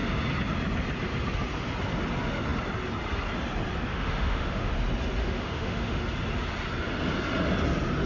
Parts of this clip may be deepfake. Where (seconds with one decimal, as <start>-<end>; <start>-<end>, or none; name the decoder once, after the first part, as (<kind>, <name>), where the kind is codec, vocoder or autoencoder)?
3.9-4.7 (autoencoder, DAC-VAE); 5.2-6.0